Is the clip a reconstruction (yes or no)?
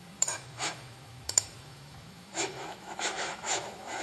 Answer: yes